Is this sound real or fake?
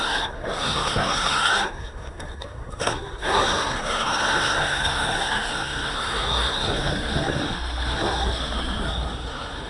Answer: fake